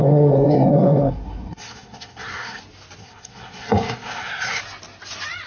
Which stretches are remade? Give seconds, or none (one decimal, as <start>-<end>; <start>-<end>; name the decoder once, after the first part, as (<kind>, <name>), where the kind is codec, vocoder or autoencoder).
0.0-2.6 (codec, SNAC); 3.0-4.6